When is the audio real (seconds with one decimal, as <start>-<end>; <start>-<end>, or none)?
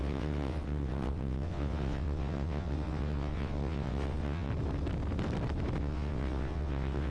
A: 4.5-5.8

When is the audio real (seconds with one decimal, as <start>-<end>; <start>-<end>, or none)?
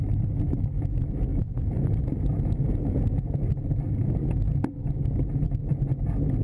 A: 0.0-1.3; 3.0-6.4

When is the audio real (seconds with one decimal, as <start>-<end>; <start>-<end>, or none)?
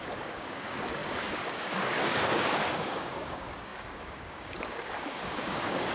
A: none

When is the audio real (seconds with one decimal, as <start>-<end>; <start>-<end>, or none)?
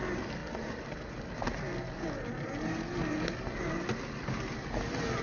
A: 0.0-5.2